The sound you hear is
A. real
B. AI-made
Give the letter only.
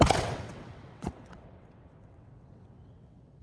B